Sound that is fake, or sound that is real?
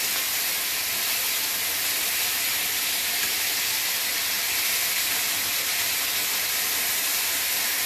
real